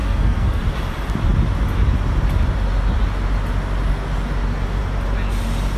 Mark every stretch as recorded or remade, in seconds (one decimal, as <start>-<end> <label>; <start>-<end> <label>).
0.0-0.6 remade; 0.6-5.8 recorded